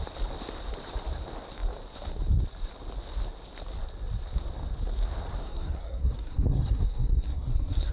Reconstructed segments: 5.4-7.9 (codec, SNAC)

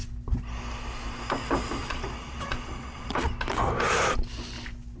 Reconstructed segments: 1.8-3.2 (vocoder, Vocos)

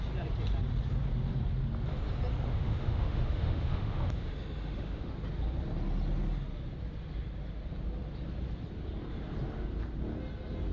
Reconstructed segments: 2.5-5.1 (autoencoder, DAC-VAE)

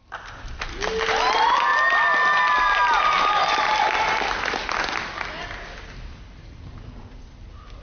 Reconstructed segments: none

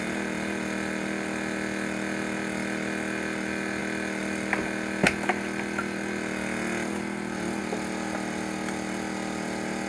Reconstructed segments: none